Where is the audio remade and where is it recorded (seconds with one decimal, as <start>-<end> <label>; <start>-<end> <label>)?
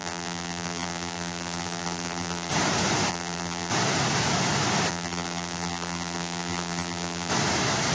0.0-2.5 remade; 2.5-3.1 recorded; 3.1-3.7 remade; 3.7-4.9 recorded; 4.9-7.3 remade; 7.3-7.9 recorded